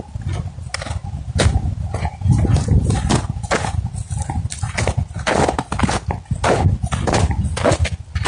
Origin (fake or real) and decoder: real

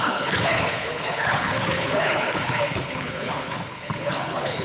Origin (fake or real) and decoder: fake, codec, HILCodec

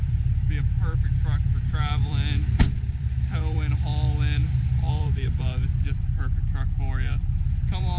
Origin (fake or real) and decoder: fake, vocoder, BigVGAN v2